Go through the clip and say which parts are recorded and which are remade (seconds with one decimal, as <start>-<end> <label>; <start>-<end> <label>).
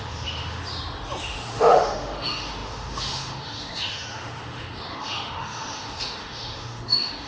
0.0-0.6 remade; 0.6-1.2 recorded; 1.2-7.3 remade